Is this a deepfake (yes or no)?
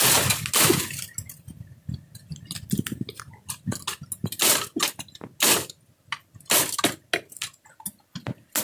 no